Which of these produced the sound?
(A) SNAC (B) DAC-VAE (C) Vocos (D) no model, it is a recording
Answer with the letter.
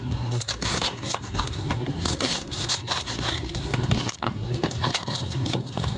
A